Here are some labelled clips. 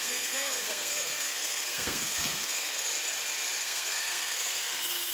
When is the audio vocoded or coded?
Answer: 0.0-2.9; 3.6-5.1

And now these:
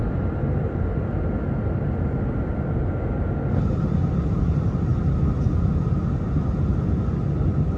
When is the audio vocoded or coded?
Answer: none